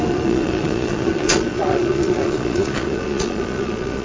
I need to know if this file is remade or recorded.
remade